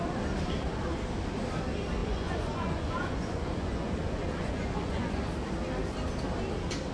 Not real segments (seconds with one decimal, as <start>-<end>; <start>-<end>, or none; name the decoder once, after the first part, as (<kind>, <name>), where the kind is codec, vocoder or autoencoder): 2.0-5.2 (vocoder, Vocos)